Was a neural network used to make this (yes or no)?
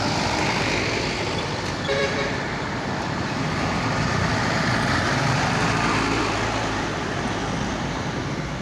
yes